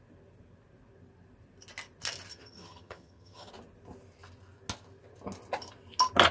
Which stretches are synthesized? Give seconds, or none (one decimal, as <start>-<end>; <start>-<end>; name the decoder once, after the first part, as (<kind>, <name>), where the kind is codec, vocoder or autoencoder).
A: 2.3-3.5 (vocoder, HiFi-GAN)